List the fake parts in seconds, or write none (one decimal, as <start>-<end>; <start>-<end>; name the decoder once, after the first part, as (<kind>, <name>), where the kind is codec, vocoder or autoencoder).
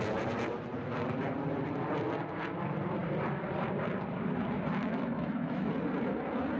4.8-5.7 (autoencoder, DAC-VAE)